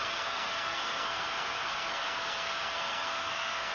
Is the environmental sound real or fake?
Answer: fake